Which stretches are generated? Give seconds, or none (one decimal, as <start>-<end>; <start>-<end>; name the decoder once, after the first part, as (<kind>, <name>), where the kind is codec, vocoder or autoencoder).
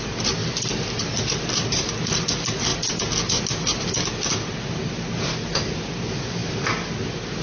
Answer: none